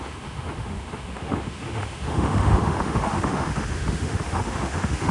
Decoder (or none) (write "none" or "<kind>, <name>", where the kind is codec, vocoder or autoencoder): autoencoder, DAC-VAE